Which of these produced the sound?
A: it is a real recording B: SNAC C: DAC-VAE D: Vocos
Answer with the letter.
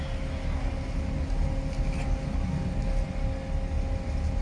A